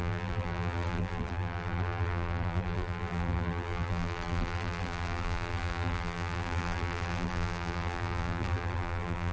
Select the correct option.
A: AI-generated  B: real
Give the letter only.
A